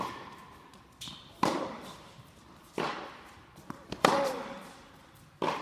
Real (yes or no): no